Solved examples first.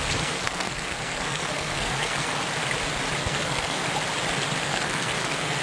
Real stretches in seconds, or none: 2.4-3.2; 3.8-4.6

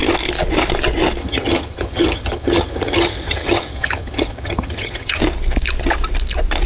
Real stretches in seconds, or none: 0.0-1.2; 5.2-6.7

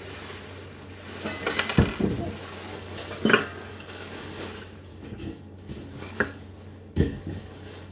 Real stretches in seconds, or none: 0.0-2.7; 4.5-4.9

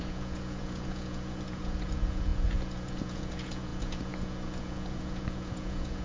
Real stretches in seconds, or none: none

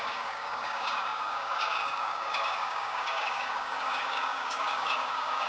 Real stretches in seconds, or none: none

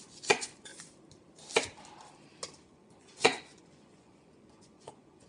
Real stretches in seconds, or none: 0.7-2.6